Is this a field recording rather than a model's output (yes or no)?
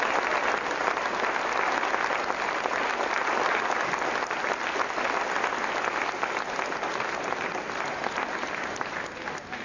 yes